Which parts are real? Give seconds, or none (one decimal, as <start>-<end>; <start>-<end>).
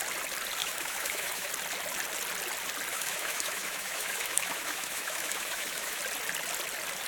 0.0-0.6; 1.5-2.9; 6.0-7.1